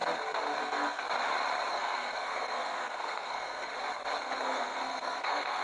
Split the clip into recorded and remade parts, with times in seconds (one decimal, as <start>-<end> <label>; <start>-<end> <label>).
0.0-0.6 recorded; 0.6-1.0 remade; 1.0-1.7 recorded; 1.7-3.7 remade; 3.7-4.4 recorded; 4.4-5.6 remade